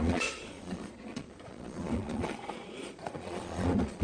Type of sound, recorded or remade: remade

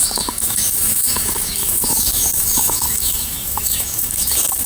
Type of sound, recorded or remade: remade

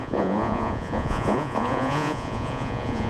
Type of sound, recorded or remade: remade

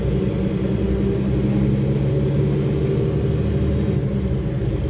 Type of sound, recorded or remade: recorded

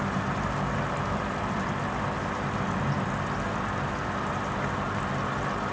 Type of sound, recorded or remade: recorded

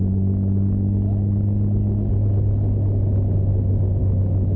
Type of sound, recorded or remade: recorded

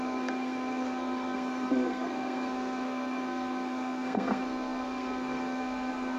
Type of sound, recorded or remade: remade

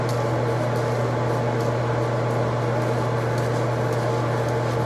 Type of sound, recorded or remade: recorded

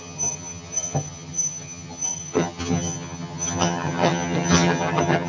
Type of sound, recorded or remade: remade